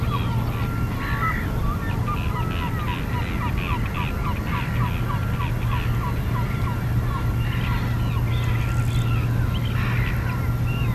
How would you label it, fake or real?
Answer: real